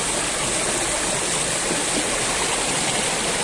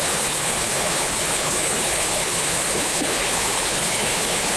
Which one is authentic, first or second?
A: first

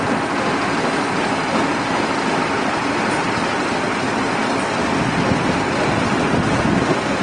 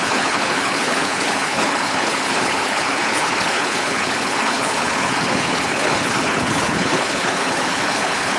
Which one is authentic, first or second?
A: first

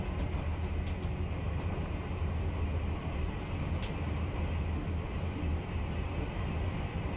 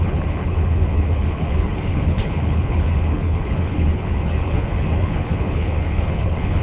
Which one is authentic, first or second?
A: first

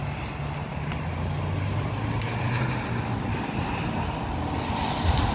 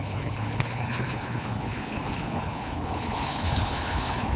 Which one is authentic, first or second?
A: first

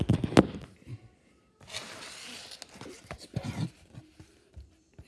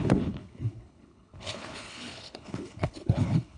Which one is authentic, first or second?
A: first